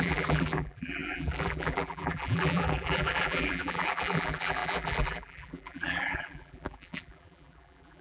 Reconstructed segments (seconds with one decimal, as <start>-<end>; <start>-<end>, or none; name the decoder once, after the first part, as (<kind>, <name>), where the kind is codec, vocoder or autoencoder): 0.0-8.0 (vocoder, BigVGAN v2)